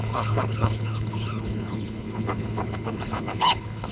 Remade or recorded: remade